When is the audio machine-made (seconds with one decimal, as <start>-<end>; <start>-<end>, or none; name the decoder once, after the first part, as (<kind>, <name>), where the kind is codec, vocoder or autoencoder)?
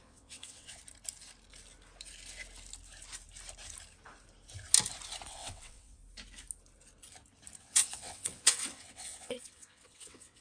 0.0-0.8 (vocoder, WaveNeXt); 5.3-6.0; 7.6-10.4